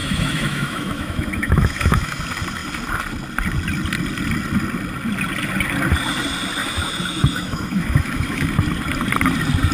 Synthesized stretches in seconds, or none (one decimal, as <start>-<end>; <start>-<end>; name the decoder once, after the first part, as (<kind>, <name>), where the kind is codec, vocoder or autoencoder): 0.0-2.2 (autoencoder, DAC-VAE); 6.6-8.5